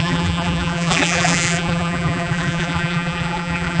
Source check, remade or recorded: remade